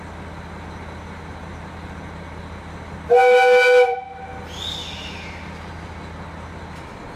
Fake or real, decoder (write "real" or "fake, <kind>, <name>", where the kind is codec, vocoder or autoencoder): real